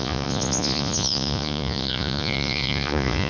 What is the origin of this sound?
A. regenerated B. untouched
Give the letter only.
A